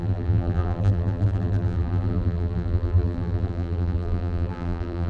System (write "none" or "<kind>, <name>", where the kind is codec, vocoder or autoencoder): vocoder, BigVGAN v2